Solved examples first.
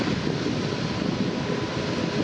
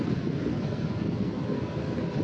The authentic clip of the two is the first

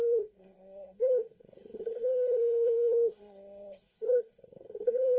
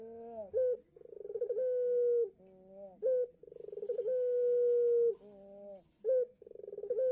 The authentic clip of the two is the second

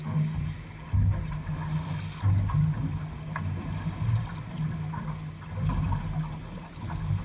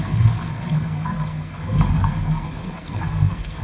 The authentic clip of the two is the first